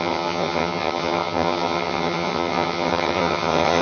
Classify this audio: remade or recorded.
remade